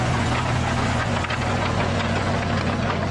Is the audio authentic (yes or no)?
no